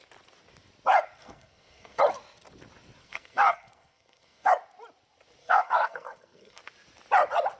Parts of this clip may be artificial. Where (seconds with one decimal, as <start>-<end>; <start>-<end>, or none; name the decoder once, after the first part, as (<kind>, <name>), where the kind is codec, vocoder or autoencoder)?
1.2-2.0 (codec, SNAC); 3.0-4.5; 5.4-6.6